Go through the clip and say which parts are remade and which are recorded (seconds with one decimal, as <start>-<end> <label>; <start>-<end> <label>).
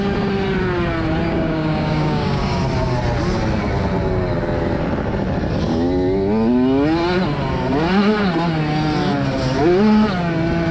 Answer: 0.0-1.2 recorded; 1.2-2.6 remade; 2.6-10.7 recorded